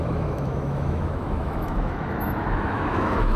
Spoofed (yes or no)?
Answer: yes